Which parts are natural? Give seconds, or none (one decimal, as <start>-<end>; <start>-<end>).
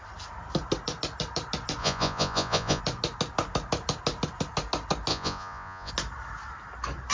0.0-1.8; 2.8-5.1; 5.9-7.1